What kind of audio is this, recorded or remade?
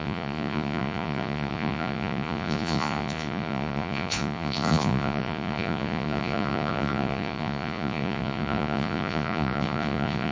remade